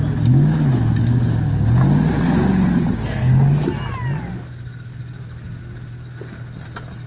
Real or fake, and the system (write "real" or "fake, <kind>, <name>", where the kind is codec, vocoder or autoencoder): real